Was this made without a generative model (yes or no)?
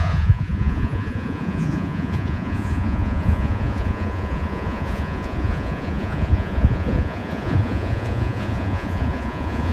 no